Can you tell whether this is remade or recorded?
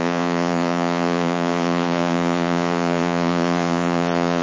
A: remade